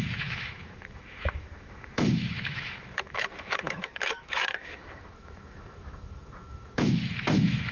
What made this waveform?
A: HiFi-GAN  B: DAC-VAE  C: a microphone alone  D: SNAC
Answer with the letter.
B